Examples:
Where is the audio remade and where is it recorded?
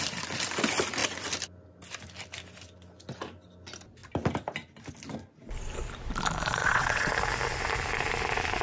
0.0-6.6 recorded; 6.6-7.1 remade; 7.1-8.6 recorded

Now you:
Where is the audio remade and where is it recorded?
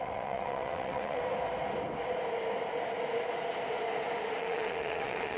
0.0-1.2 remade; 1.2-4.4 recorded; 4.4-5.4 remade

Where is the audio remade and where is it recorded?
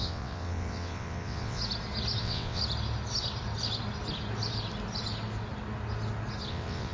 0.0-1.6 remade; 1.6-2.2 recorded; 2.2-2.6 remade; 2.6-6.5 recorded; 6.5-6.9 remade